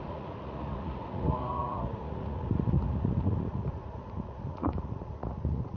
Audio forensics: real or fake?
fake